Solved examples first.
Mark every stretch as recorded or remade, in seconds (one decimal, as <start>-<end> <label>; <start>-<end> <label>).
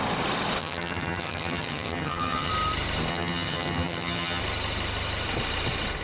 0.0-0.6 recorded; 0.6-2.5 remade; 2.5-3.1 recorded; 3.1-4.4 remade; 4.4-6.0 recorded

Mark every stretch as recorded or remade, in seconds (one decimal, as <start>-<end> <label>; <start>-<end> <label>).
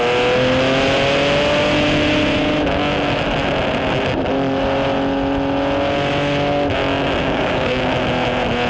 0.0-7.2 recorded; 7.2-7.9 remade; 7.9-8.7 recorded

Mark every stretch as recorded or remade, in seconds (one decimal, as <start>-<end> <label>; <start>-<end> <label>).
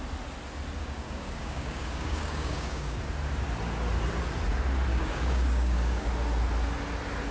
0.0-0.8 recorded; 0.8-3.0 remade; 3.0-4.9 recorded; 4.9-6.1 remade; 6.1-7.3 recorded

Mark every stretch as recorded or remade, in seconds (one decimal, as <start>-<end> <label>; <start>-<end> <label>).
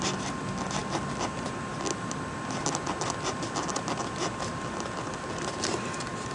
0.0-6.3 recorded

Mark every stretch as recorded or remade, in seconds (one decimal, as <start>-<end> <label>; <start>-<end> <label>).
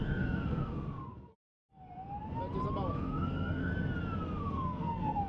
0.0-1.5 remade; 1.5-2.9 recorded; 2.9-3.7 remade; 3.7-4.4 recorded; 4.4-5.3 remade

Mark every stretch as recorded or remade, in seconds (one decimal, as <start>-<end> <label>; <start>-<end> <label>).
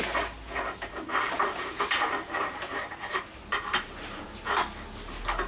0.0-1.1 recorded; 1.1-4.4 remade; 4.4-5.5 recorded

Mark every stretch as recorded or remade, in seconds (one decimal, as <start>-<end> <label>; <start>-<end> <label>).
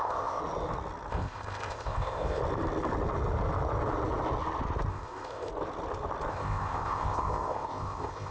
0.0-0.4 remade; 0.4-1.1 recorded; 1.1-2.4 remade; 2.4-4.9 recorded; 4.9-5.5 remade; 5.5-6.3 recorded; 6.3-8.3 remade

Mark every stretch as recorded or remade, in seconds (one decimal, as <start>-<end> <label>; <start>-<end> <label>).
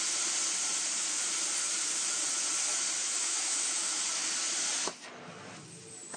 0.0-3.0 recorded; 3.0-4.0 remade; 4.0-6.2 recorded